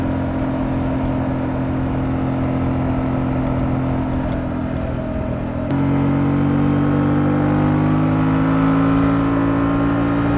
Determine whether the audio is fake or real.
real